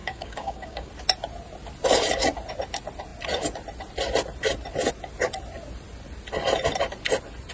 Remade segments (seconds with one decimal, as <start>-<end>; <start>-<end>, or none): 0.0-0.9